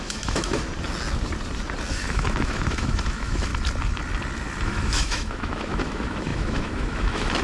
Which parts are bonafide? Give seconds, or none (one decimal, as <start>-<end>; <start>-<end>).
0.7-1.9; 3.5-4.6